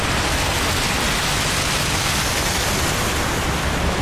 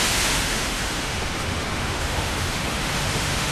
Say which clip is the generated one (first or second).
second